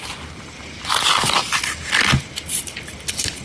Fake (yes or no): yes